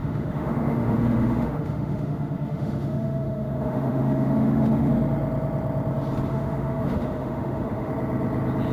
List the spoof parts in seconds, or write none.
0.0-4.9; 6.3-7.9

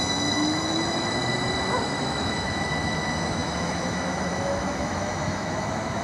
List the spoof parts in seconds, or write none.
0.0-1.2; 2.0-6.0

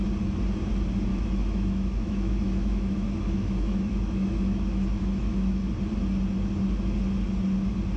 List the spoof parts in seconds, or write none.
1.1-5.7